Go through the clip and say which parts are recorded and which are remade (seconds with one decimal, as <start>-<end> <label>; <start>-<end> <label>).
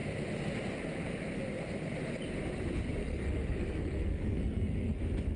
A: 0.0-3.0 recorded; 3.0-5.0 remade; 5.0-5.4 recorded